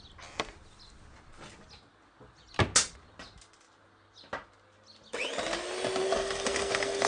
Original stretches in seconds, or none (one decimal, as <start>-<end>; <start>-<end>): 0.0-6.0